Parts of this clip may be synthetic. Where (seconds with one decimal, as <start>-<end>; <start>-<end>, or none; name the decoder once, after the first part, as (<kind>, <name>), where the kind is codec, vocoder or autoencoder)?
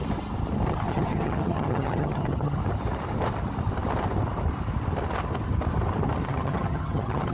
0.7-2.6 (vocoder, HiFi-GAN); 6.3-7.3